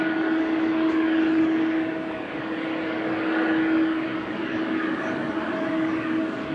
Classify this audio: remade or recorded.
remade